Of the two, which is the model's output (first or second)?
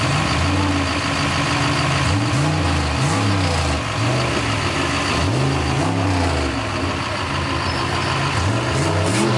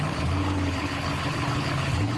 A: second